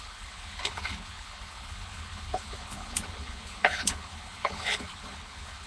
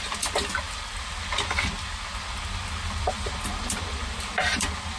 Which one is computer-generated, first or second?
first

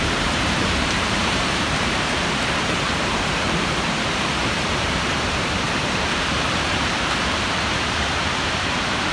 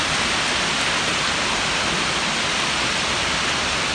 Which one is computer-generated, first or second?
first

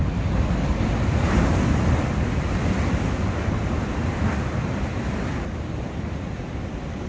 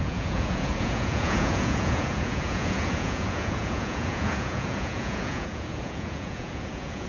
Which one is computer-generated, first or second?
second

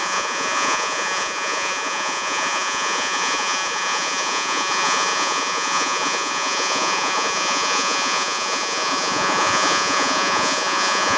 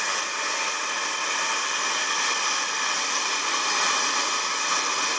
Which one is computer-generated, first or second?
first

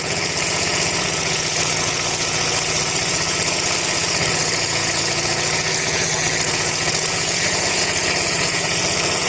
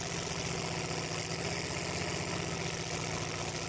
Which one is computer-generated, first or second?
first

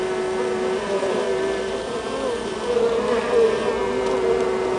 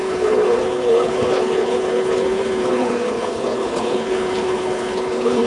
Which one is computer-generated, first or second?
second